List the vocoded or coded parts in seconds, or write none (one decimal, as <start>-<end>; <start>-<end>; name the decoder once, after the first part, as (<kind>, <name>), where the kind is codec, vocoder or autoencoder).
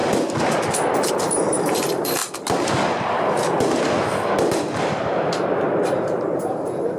1.1-2.2 (vocoder, BigVGAN v2); 5.0-7.0